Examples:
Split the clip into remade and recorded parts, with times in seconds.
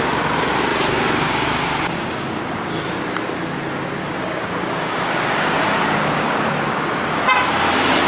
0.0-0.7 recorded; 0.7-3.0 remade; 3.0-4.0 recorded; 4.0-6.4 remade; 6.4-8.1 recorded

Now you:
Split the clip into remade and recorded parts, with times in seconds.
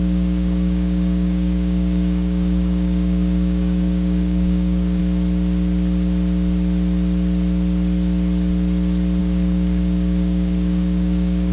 0.0-5.0 remade; 5.0-9.2 recorded; 9.2-11.5 remade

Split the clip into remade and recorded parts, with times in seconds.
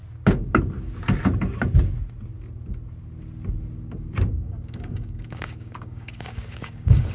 0.0-4.3 recorded; 4.3-7.1 remade